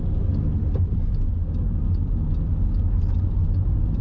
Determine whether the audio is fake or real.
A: real